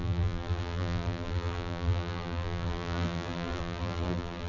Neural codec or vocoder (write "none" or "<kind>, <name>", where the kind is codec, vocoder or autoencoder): vocoder, BigVGAN v2